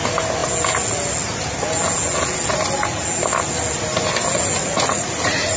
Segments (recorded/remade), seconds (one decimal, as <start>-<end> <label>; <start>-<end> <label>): 0.0-4.6 recorded; 4.6-5.6 remade